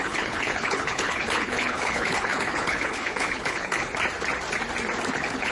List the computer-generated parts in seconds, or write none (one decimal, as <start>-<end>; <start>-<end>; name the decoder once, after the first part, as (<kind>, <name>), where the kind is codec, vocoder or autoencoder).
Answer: 0.0-3.9 (codec, HILCodec); 5.1-5.5